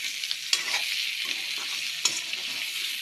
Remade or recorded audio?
recorded